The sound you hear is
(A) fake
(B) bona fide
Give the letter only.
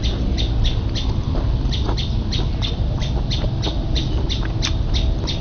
B